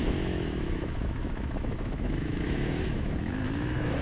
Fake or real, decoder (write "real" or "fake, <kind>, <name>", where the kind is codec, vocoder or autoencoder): fake, autoencoder, DAC-VAE